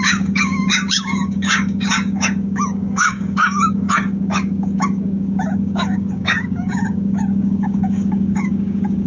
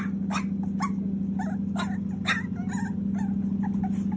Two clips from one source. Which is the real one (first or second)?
second